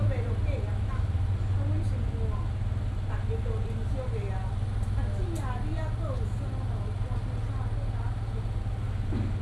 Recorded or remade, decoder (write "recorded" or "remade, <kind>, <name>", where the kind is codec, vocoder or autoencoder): recorded